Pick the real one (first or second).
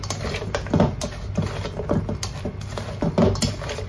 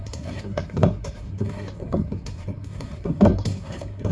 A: first